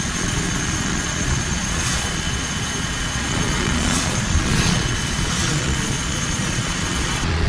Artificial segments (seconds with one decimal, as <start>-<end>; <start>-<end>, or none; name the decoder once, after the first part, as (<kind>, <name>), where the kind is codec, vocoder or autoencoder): 0.0-7.5 (vocoder, Vocos)